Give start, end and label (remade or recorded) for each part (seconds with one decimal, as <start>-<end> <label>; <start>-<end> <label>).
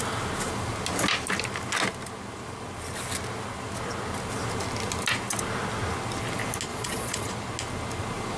0.0-6.7 recorded; 6.7-7.3 remade; 7.3-8.4 recorded